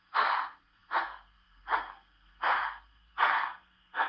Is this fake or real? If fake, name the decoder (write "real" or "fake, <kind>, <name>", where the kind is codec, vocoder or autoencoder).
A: fake, codec, SNAC